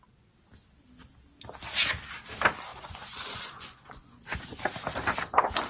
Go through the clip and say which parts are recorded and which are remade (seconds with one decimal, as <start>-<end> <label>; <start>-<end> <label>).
0.0-2.7 recorded; 2.7-4.6 remade; 4.6-5.7 recorded